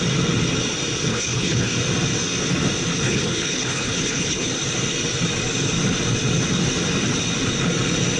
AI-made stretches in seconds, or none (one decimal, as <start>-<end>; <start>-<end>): 1.1-1.7; 3.0-4.5